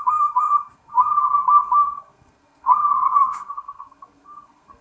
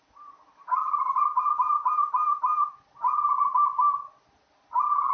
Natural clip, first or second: second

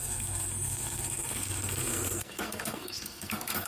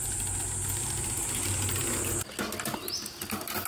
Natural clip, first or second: second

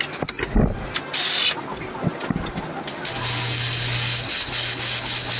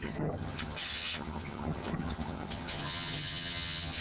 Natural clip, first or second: first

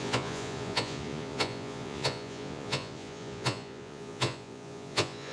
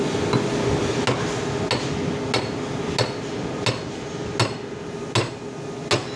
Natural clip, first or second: second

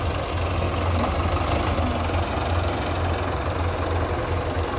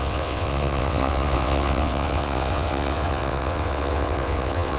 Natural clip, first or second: first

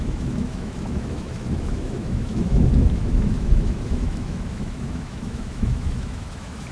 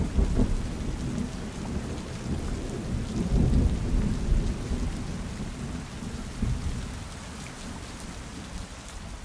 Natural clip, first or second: second